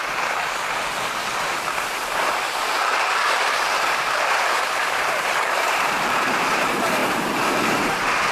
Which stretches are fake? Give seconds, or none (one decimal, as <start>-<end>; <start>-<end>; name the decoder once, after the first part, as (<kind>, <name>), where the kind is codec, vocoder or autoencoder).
0.0-2.8 (vocoder, BigVGAN v2); 3.6-8.3